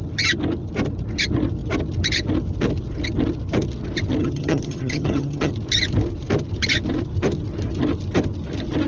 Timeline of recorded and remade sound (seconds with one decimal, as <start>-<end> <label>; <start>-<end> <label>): 0.0-4.2 recorded; 4.2-5.5 remade; 5.5-8.9 recorded